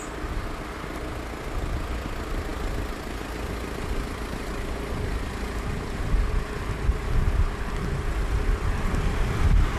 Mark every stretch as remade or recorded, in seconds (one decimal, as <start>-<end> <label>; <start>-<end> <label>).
0.0-9.8 recorded